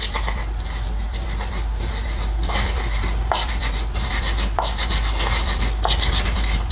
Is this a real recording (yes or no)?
yes